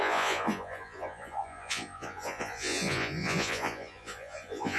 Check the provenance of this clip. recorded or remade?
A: remade